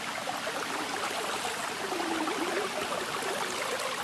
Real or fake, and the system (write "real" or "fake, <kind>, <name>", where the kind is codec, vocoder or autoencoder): real